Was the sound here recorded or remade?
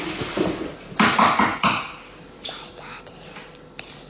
recorded